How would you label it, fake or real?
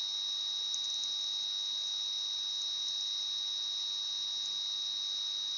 real